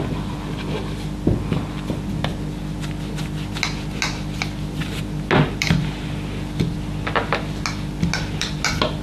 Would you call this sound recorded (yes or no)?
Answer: yes